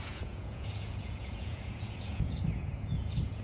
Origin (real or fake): fake